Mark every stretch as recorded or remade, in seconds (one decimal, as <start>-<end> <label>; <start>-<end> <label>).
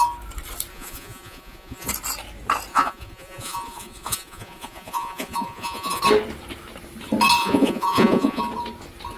0.0-0.7 recorded; 0.7-1.9 remade; 1.9-2.7 recorded; 2.7-6.0 remade; 6.0-7.4 recorded; 7.4-8.4 remade; 8.4-9.2 recorded